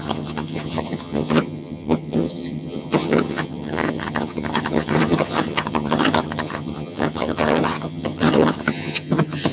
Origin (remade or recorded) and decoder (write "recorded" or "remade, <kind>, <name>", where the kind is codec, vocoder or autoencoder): remade, vocoder, HiFi-GAN